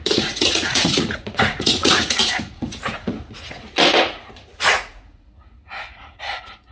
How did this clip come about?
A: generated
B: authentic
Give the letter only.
A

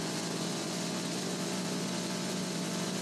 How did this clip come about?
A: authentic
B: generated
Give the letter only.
B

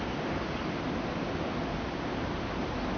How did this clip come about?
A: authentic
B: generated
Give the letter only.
A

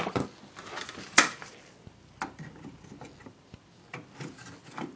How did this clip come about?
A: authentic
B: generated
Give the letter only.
A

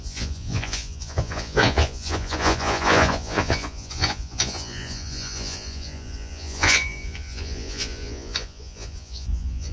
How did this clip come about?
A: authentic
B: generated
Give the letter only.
B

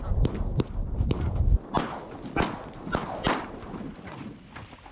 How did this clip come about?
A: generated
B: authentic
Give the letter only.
B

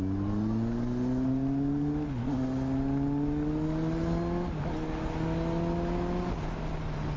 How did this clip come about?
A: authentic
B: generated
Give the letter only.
A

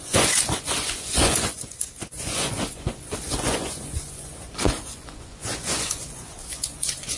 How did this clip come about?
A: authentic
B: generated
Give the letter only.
B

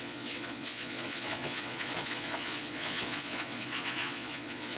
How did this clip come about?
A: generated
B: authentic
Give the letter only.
A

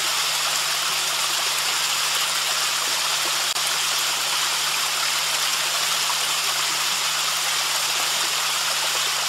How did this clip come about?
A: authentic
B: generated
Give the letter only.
A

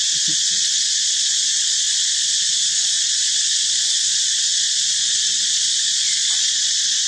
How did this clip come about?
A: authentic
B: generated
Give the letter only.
B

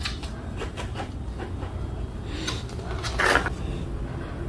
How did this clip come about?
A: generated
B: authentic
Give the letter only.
B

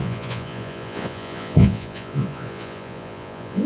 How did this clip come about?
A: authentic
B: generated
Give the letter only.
B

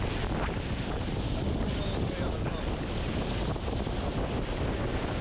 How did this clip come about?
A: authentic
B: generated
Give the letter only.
A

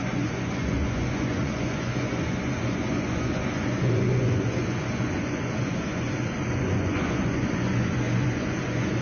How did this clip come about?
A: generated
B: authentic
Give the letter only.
A